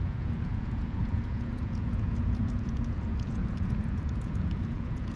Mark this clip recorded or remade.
remade